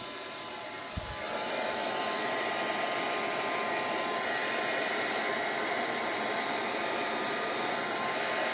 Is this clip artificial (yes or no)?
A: no